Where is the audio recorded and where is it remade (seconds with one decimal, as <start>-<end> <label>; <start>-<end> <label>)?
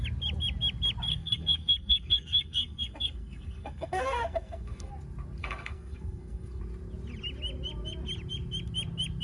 0.0-1.1 recorded; 1.1-4.9 remade; 4.9-5.4 recorded; 5.4-6.6 remade; 6.6-9.2 recorded